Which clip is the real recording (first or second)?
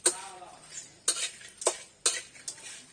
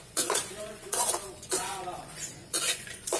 first